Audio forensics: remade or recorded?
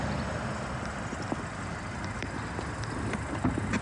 recorded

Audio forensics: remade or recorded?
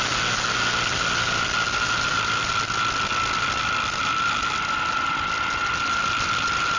recorded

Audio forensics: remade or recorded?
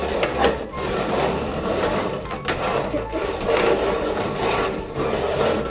recorded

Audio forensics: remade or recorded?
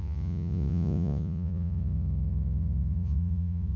remade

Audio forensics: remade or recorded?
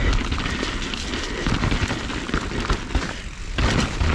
recorded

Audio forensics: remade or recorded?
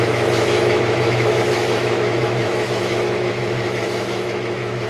remade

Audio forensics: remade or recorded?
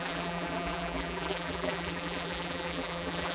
remade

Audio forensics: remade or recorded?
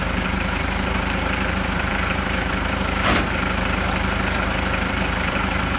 remade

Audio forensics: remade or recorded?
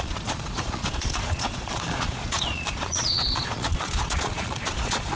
remade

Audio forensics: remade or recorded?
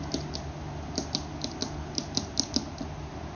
recorded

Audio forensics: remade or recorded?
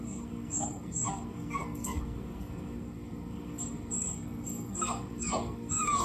remade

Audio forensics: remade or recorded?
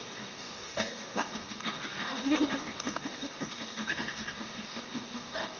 remade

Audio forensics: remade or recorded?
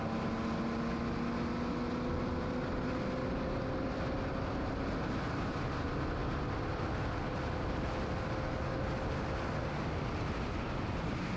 recorded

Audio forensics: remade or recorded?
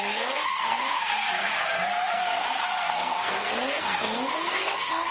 remade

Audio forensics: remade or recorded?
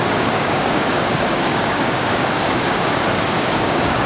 remade